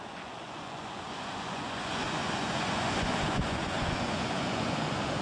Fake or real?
fake